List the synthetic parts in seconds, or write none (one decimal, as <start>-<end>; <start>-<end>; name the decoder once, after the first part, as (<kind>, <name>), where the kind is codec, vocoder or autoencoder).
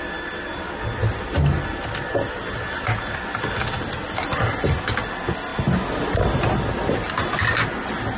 none